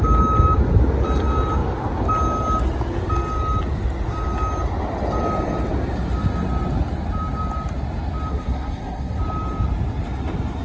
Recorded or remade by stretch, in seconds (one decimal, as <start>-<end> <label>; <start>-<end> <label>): 0.0-8.3 recorded; 8.3-9.2 remade; 9.2-10.6 recorded